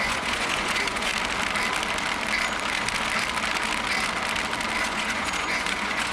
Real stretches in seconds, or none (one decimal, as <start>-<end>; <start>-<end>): 1.1-4.8